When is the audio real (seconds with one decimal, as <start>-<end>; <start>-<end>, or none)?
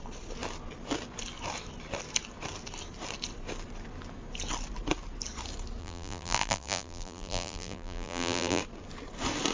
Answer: 0.0-5.8; 8.6-9.5